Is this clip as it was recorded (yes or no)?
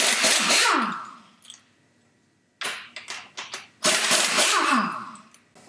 yes